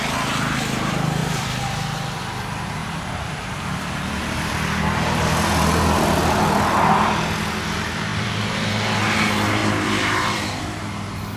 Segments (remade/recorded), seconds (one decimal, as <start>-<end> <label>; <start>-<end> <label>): 0.0-1.2 recorded; 1.2-2.2 remade; 2.2-2.8 recorded; 2.8-6.0 remade; 6.0-8.1 recorded; 8.1-8.7 remade; 8.7-9.6 recorded; 9.6-10.6 remade; 10.6-11.4 recorded